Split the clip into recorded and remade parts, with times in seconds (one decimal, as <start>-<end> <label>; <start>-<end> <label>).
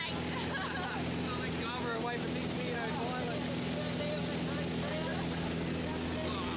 0.0-6.6 recorded